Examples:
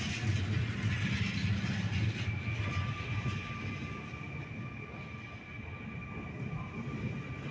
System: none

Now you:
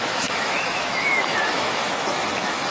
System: autoencoder, DAC-VAE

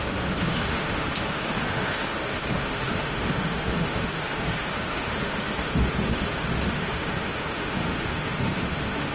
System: autoencoder, DAC-VAE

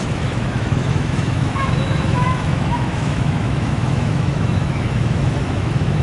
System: autoencoder, DAC-VAE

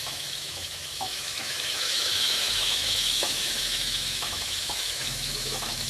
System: autoencoder, DAC-VAE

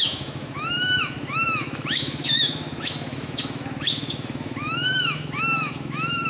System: autoencoder, DAC-VAE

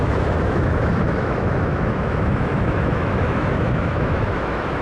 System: autoencoder, DAC-VAE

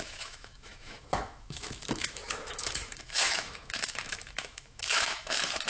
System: autoencoder, DAC-VAE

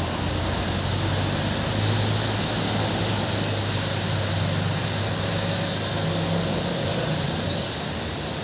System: none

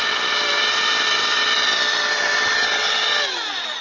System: none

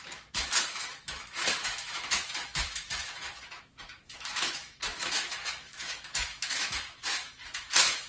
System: autoencoder, DAC-VAE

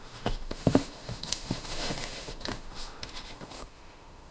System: autoencoder, DAC-VAE